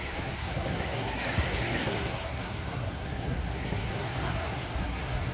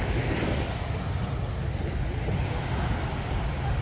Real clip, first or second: second